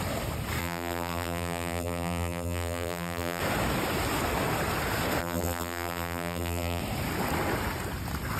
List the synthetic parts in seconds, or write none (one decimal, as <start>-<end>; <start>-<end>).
0.6-3.4; 5.2-6.8